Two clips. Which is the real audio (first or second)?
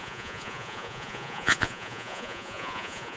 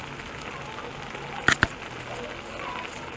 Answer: second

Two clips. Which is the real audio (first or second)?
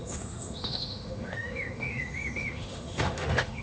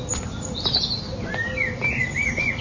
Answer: second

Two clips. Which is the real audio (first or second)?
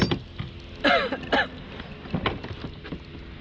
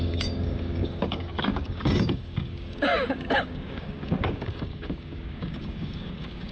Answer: first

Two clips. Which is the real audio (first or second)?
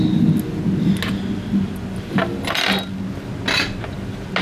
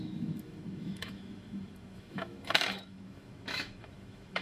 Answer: first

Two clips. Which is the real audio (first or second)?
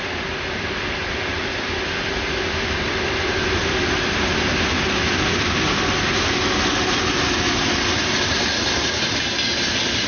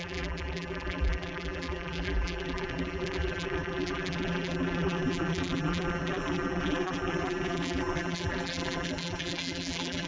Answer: first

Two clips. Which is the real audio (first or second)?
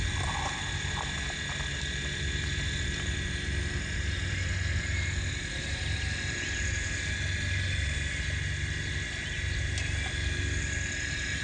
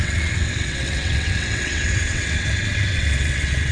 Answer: first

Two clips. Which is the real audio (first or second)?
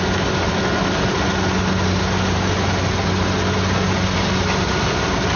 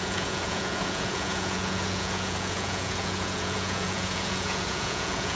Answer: first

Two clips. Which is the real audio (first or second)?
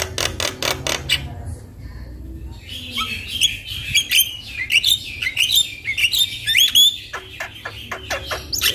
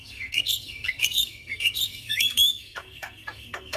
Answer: first